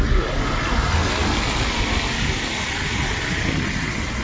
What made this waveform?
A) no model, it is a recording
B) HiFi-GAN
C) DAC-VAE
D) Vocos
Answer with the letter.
A